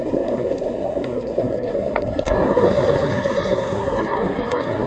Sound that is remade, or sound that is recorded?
remade